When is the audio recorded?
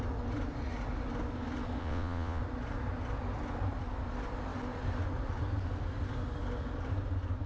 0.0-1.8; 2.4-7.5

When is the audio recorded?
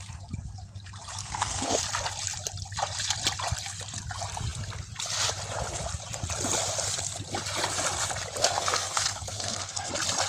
0.0-1.2; 1.8-8.4; 9.9-10.3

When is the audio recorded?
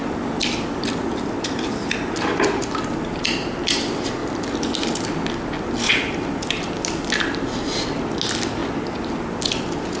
0.0-10.0